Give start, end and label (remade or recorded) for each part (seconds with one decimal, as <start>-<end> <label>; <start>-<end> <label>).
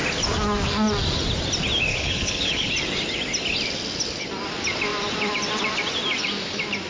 0.0-1.9 recorded; 1.9-2.7 remade; 2.7-6.9 recorded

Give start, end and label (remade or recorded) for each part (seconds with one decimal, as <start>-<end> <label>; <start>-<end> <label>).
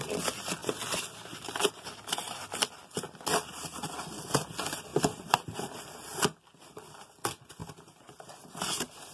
0.0-0.6 recorded; 0.6-2.4 remade; 2.4-4.9 recorded; 4.9-5.8 remade; 5.8-9.1 recorded